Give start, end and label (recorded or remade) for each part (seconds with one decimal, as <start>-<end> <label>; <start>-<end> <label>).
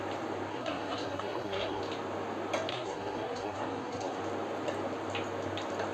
0.0-0.5 recorded; 0.5-1.8 remade; 1.8-2.7 recorded; 2.7-4.2 remade; 4.2-5.9 recorded